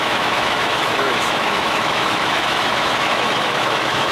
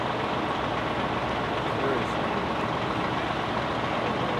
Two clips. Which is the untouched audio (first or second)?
second